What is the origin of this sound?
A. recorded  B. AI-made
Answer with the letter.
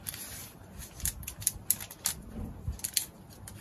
A